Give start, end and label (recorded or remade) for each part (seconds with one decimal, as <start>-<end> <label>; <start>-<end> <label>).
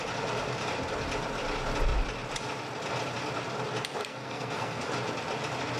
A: 0.0-4.0 recorded; 4.0-4.9 remade; 4.9-5.8 recorded